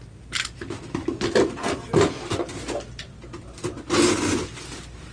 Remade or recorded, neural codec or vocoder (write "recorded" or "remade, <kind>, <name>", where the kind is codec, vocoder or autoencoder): recorded